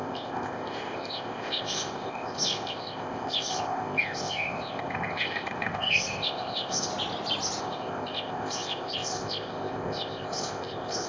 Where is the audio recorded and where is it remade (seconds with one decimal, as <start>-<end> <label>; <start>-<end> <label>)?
0.0-6.9 remade; 6.9-7.6 recorded; 7.6-11.1 remade